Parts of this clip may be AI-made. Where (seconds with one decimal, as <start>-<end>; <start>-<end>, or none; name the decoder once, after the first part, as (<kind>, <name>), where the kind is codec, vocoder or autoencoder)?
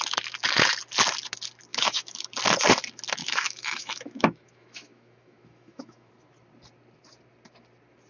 1.7-2.3 (autoencoder, DAC-VAE); 3.2-6.1